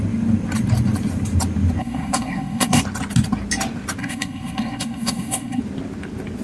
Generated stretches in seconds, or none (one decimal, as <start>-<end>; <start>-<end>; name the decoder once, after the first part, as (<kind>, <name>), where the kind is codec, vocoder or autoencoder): 1.8-2.8 (codec, SNAC); 4.0-5.6